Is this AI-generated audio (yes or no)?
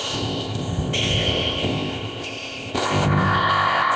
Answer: yes